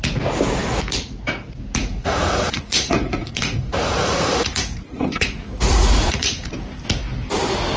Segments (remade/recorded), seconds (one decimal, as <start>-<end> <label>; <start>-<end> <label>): 0.0-1.8 recorded; 1.8-6.5 remade; 6.5-7.8 recorded